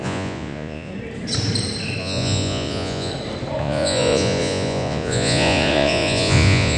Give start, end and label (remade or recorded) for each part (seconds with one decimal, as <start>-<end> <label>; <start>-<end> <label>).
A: 0.0-0.9 remade; 0.9-2.0 recorded; 2.0-3.1 remade; 3.1-3.6 recorded; 3.6-6.8 remade